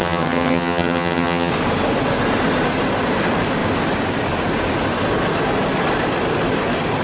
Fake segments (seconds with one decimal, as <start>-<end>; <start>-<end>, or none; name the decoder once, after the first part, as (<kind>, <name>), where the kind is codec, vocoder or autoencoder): 0.0-1.5 (vocoder, HiFi-GAN)

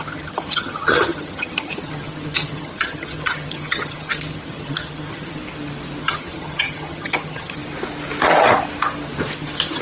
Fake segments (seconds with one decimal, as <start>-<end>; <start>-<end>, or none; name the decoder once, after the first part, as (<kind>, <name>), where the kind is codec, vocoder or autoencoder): 0.0-5.4 (vocoder, HiFi-GAN); 6.0-7.6; 9.3-9.8

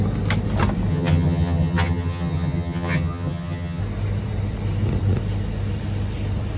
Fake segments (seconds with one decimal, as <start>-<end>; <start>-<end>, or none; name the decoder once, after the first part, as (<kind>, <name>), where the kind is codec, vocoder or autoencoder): 0.9-3.8 (vocoder, HiFi-GAN)

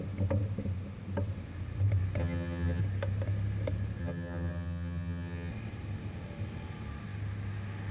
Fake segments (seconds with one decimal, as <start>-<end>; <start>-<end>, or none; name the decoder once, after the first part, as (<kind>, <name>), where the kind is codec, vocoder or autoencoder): 2.2-2.8 (vocoder, HiFi-GAN); 4.0-5.5